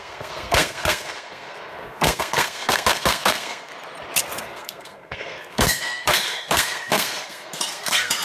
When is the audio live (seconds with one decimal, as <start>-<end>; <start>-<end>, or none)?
3.7-4.4